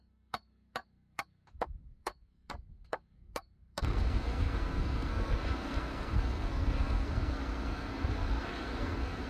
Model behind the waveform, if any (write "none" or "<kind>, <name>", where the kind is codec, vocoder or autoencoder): codec, SNAC